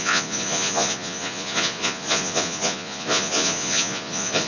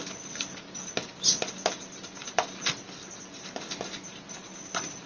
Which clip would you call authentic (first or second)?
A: second